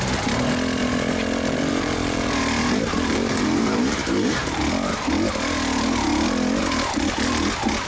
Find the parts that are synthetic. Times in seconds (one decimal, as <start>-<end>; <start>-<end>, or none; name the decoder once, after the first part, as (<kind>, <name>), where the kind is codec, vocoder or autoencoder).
0.8-4.6 (vocoder, BigVGAN v2)